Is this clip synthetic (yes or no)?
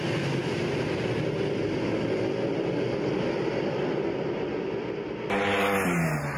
no